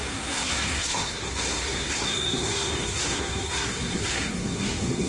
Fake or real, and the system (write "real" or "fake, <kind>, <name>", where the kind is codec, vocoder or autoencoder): fake, codec, SNAC